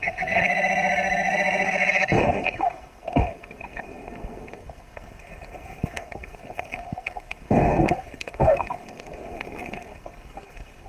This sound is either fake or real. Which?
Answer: fake